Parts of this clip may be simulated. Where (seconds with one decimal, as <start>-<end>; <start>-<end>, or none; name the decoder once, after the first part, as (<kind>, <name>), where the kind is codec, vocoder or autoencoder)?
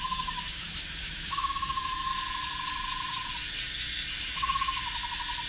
0.0-2.1 (autoencoder, DAC-VAE)